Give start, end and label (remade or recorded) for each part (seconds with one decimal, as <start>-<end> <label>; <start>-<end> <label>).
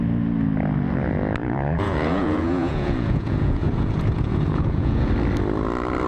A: 0.0-1.4 recorded; 1.4-5.1 remade; 5.1-6.1 recorded